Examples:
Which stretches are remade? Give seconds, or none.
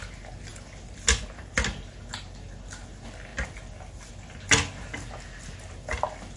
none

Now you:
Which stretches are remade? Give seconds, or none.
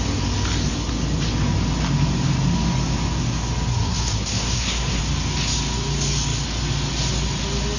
3.7-5.0 (codec, SNAC)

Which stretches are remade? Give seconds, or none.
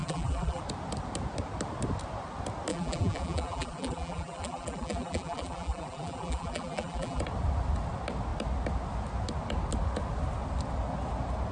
0.0-0.6 (vocoder, BigVGAN v2); 2.7-7.2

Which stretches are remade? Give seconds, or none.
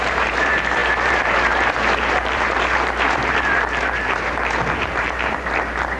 0.0-6.0 (vocoder, BigVGAN v2)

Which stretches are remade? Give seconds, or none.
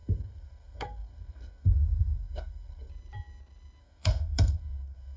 0.0-2.9 (codec, SNAC); 3.8-5.2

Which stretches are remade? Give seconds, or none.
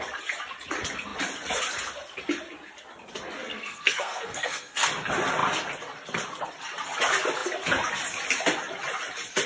3.5-4.9 (codec, SNAC)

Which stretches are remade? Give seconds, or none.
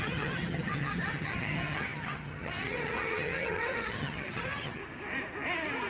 0.0-4.8 (vocoder, HiFi-GAN)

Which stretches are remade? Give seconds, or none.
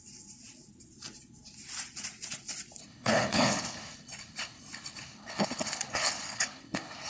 2.8-7.1 (codec, HILCodec)